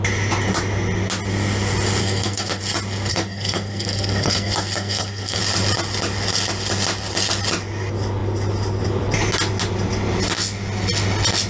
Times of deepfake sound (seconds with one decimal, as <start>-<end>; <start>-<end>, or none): 2.0-2.6; 3.1-5.4